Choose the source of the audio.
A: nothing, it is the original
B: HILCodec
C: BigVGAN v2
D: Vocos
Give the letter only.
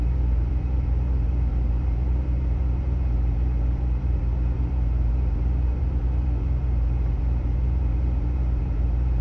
C